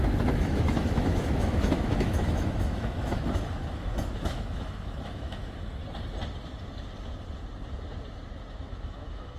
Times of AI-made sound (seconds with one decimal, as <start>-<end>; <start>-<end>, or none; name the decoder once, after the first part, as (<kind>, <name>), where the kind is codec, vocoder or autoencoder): 0.0-5.8 (autoencoder, DAC-VAE); 8.7-9.4